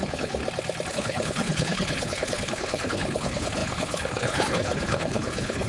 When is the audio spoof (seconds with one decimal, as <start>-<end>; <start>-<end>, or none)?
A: 0.0-0.4; 0.9-5.7